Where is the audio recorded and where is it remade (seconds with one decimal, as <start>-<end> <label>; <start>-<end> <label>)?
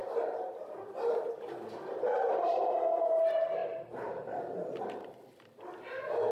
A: 0.0-3.6 recorded; 3.6-5.1 remade; 5.1-6.3 recorded